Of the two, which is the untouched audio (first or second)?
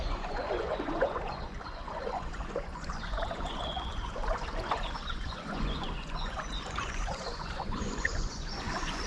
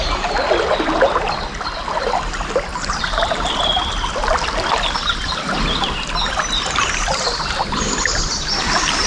second